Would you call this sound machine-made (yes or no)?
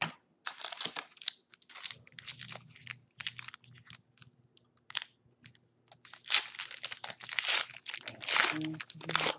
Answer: no